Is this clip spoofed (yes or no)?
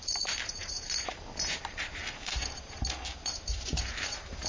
yes